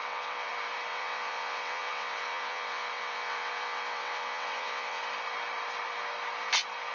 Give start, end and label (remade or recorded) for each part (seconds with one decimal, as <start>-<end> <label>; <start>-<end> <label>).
0.0-0.5 remade; 0.5-0.9 recorded; 0.9-5.0 remade; 5.0-6.9 recorded